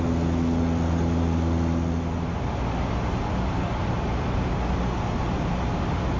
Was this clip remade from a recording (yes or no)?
no